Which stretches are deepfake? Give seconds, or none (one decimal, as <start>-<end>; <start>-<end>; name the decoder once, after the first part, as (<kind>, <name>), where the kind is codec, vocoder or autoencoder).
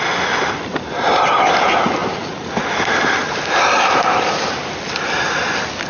none